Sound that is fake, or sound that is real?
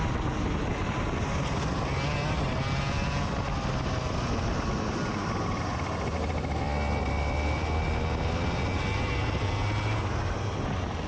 real